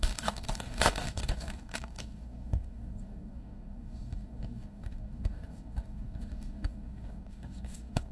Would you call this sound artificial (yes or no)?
yes